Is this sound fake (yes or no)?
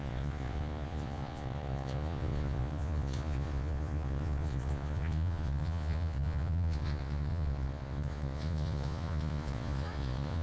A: yes